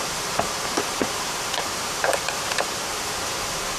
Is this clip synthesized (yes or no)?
yes